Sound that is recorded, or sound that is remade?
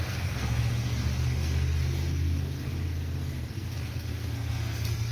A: remade